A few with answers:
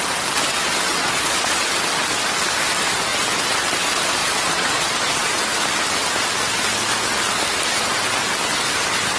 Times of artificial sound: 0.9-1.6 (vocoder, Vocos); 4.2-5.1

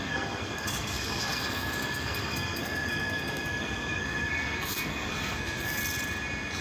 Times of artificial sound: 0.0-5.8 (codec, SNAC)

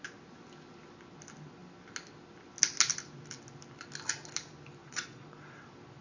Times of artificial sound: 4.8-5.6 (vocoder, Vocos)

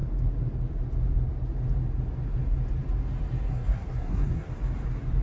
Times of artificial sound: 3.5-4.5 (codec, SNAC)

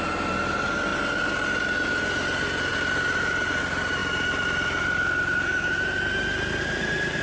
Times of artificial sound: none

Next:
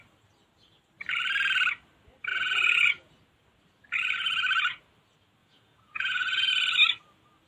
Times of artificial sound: 2.3-3.1 (vocoder, Vocos); 5.4-6.5

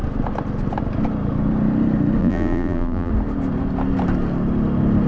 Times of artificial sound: 2.2-3.1 (vocoder, BigVGAN v2)